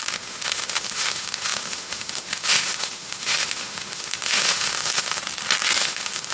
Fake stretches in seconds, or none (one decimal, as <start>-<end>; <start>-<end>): 0.0-5.2; 5.8-6.3

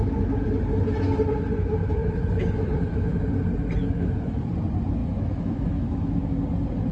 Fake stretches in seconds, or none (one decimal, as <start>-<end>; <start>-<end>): 2.0-3.2; 3.8-4.5; 5.0-6.4

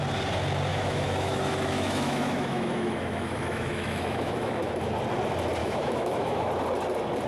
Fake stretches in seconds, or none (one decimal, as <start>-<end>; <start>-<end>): 0.7-4.7; 5.6-6.5

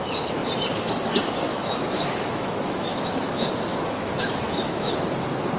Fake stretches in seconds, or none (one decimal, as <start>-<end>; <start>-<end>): 1.5-4.9